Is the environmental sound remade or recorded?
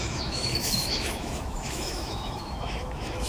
remade